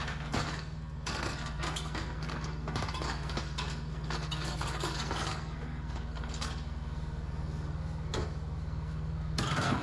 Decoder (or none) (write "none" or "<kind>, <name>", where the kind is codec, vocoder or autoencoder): codec, SNAC